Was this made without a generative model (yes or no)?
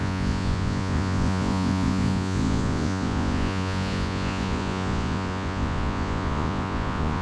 no